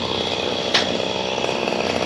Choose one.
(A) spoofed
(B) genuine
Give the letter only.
B